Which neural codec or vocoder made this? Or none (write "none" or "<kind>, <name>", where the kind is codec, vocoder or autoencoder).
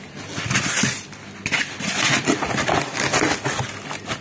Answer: none